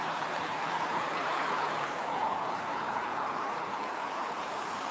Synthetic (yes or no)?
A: yes